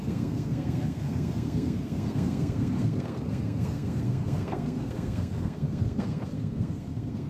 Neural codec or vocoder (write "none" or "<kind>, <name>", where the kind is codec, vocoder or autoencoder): codec, SNAC